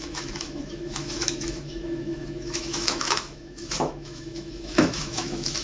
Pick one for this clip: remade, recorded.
remade